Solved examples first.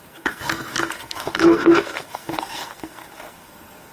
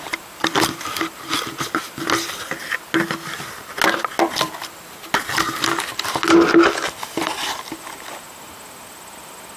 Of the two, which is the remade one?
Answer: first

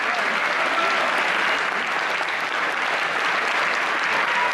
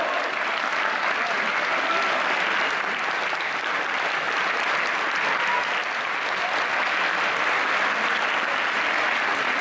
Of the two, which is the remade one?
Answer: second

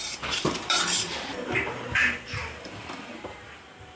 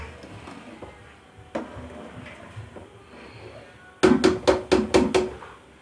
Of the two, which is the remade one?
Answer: first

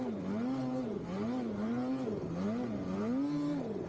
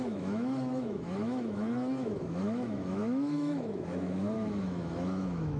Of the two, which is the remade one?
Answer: second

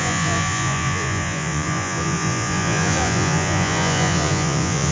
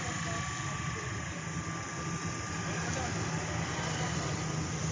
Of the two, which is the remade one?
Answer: first